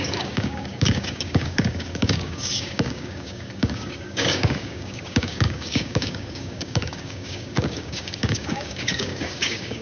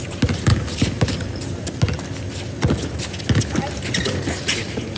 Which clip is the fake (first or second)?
first